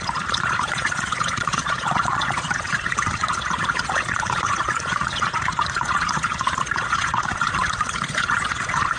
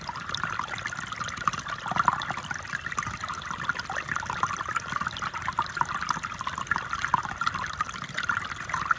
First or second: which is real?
second